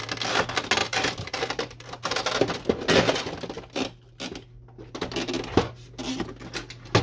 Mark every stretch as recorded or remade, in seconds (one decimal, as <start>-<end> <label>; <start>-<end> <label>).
0.0-0.8 recorded; 0.8-2.2 remade; 2.2-7.0 recorded